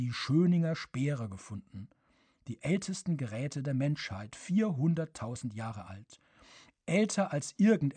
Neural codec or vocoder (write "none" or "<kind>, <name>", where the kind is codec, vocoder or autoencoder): none